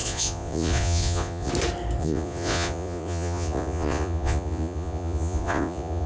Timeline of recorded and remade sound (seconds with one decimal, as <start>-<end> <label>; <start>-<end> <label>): 0.0-1.5 remade; 1.5-2.0 recorded; 2.0-6.1 remade